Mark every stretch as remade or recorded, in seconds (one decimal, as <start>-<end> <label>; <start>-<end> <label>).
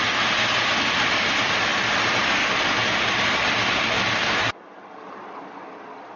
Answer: 0.0-6.2 recorded